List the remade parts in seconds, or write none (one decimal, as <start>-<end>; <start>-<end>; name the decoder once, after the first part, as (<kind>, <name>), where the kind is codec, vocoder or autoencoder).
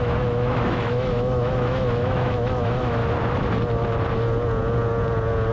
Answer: 0.0-3.0 (autoencoder, DAC-VAE)